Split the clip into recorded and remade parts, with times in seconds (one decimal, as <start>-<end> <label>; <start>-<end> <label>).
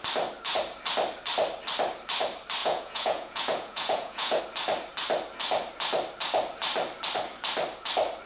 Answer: 0.0-2.6 recorded; 2.6-4.4 remade; 4.4-8.3 recorded